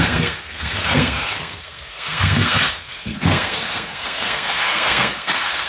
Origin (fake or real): fake